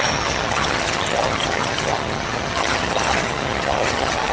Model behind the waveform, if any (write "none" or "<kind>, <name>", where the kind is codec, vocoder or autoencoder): vocoder, HiFi-GAN